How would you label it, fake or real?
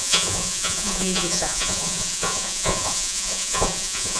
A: fake